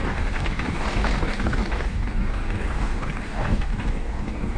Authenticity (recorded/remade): remade